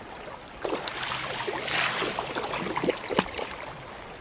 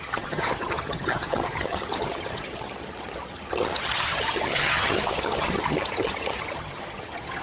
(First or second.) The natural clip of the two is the first